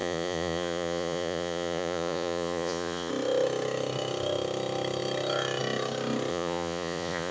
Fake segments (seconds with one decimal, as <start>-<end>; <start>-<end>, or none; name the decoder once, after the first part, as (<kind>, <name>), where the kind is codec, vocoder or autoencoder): 0.0-3.1 (vocoder, Vocos); 6.3-7.3